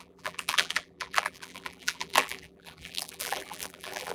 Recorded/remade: remade